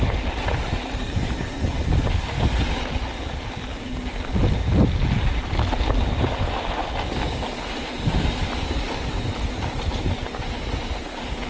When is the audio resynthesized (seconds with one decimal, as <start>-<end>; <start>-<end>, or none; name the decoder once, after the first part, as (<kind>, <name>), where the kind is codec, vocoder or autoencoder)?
none